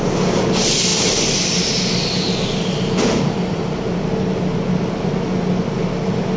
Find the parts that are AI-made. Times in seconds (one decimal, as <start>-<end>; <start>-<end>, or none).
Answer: none